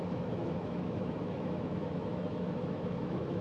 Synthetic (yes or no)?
yes